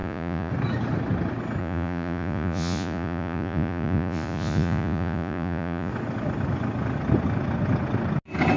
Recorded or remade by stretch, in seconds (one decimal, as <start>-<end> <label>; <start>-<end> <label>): 0.0-0.5 remade; 0.5-1.6 recorded; 1.6-5.9 remade; 5.9-8.6 recorded